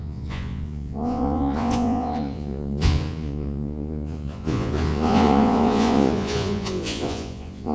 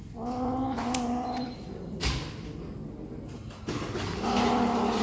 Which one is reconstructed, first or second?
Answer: first